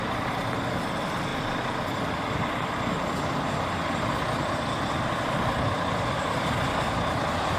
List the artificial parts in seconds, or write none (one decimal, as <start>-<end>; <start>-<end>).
1.3-2.2